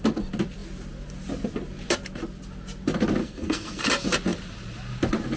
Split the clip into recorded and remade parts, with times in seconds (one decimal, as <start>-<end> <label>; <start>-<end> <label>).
0.0-3.2 recorded; 3.2-3.9 remade; 3.9-5.4 recorded